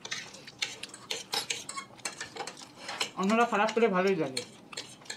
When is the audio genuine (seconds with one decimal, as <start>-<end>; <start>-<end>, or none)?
0.0-0.7; 3.8-5.2